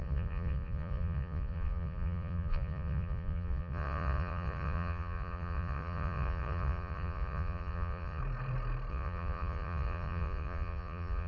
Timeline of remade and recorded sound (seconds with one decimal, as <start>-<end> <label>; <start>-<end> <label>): 0.0-8.2 remade; 8.2-8.9 recorded; 8.9-11.3 remade